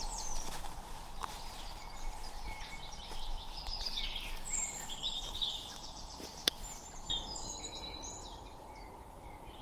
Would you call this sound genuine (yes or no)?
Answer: no